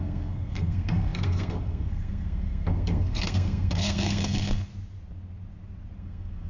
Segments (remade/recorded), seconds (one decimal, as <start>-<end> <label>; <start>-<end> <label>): 0.0-4.7 remade; 4.7-6.0 recorded; 6.0-6.5 remade